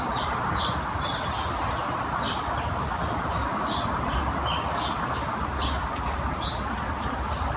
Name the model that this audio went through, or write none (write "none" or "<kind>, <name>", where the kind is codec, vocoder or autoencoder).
none